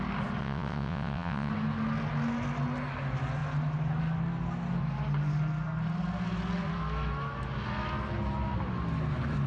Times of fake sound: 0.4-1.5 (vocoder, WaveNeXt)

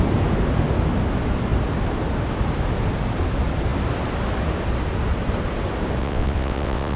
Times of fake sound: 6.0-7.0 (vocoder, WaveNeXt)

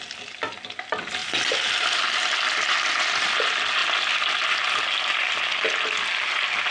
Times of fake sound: none